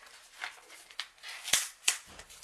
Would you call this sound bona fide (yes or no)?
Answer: no